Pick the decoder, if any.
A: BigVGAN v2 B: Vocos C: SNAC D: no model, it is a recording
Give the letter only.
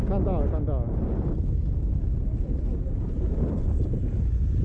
D